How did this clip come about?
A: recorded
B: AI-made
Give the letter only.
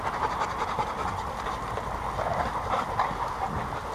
A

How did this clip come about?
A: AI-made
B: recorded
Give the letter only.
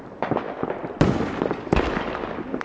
B